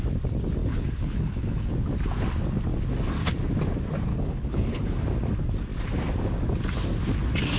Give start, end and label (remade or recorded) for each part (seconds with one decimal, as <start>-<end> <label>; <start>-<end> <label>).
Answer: 0.0-0.6 recorded; 0.6-1.7 remade; 1.7-4.1 recorded; 4.1-5.0 remade; 5.0-7.6 recorded